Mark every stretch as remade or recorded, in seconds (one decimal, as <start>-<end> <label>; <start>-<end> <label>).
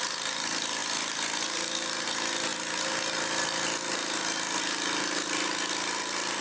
0.0-0.8 remade; 0.8-1.4 recorded; 1.4-2.5 remade; 2.5-4.6 recorded; 4.6-6.4 remade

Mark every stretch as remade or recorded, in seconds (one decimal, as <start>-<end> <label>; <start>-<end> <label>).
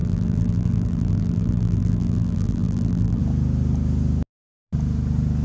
0.0-3.2 remade; 3.2-5.4 recorded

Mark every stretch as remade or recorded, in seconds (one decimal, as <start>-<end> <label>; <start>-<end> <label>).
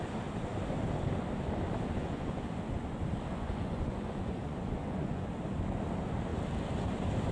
0.0-2.0 recorded; 2.0-2.5 remade; 2.5-3.3 recorded; 3.3-5.3 remade; 5.3-7.3 recorded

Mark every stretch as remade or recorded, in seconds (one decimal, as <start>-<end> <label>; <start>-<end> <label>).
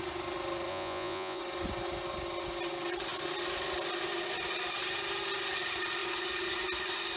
0.0-0.7 recorded; 0.7-1.4 remade; 1.4-7.2 recorded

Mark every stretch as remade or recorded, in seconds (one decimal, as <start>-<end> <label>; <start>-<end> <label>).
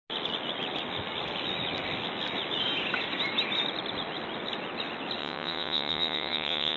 0.0-5.2 recorded; 5.2-6.8 remade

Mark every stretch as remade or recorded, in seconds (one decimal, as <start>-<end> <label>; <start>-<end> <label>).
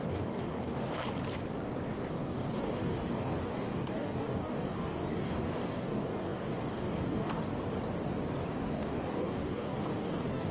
0.0-1.0 remade; 1.0-2.1 recorded; 2.1-7.4 remade; 7.4-8.5 recorded; 8.5-10.5 remade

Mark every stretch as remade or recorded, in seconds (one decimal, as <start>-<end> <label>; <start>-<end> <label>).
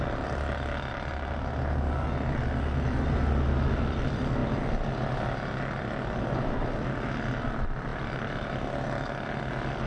0.0-9.9 recorded